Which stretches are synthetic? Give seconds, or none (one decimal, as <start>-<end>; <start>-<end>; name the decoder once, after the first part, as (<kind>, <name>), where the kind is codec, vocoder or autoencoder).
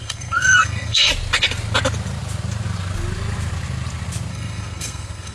0.0-1.1 (codec, SNAC); 4.3-5.3